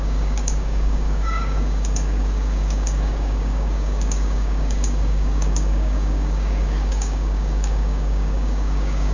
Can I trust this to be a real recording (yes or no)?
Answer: no